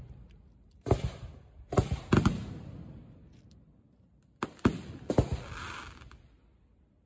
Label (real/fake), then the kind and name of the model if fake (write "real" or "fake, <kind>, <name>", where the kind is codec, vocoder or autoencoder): real